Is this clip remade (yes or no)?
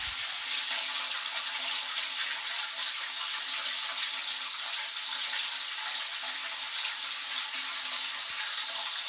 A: no